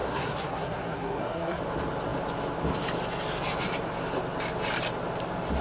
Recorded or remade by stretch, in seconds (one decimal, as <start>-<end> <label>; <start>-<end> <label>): 0.0-1.6 remade; 1.6-5.6 recorded